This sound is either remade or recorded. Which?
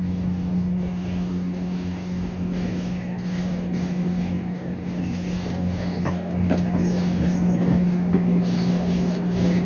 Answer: remade